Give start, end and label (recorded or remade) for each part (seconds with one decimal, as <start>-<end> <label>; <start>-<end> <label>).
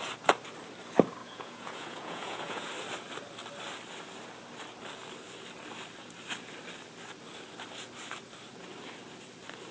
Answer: 0.0-1.2 recorded; 1.2-2.7 remade; 2.7-9.7 recorded